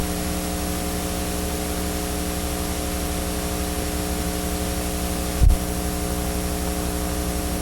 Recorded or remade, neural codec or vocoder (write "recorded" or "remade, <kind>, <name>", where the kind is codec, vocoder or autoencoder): recorded